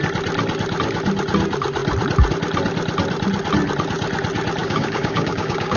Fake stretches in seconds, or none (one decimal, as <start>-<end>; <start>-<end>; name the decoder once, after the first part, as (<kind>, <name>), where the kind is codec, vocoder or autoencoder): 4.6-5.8 (codec, DAC)